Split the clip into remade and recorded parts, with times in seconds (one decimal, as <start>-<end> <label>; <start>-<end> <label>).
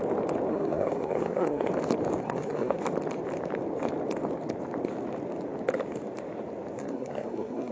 0.0-0.5 recorded; 0.5-1.7 remade; 1.7-2.2 recorded; 2.2-2.8 remade; 2.8-6.8 recorded; 6.8-7.7 remade